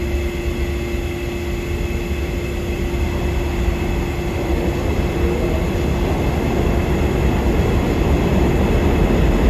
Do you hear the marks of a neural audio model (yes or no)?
no